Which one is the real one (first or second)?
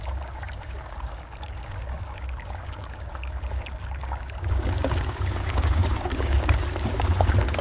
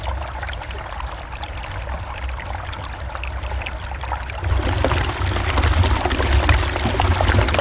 second